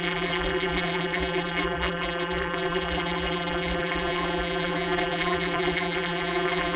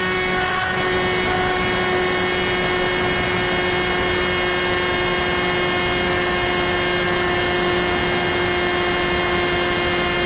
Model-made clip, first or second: first